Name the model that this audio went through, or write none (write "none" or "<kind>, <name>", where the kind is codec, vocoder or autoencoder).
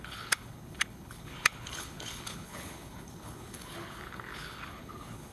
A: codec, HILCodec